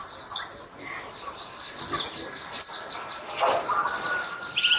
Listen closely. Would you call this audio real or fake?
real